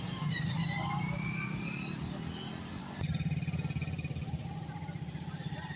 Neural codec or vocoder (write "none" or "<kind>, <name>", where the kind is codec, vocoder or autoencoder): none